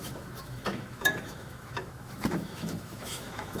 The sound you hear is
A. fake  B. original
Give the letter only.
A